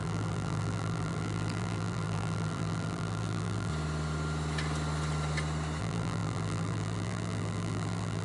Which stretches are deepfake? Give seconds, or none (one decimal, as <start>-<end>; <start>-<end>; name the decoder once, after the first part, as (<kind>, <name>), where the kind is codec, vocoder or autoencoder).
0.0-3.7 (vocoder, BigVGAN v2); 5.8-8.2